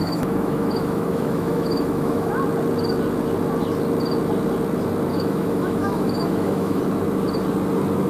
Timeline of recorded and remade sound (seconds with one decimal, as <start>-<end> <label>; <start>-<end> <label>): 0.0-2.3 remade; 2.3-5.1 recorded; 5.1-6.8 remade; 6.8-8.1 recorded